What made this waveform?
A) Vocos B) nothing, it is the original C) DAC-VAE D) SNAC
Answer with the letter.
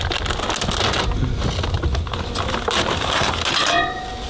B